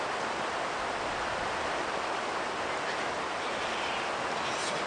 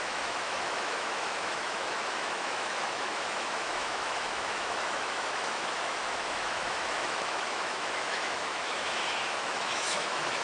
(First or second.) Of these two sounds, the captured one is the first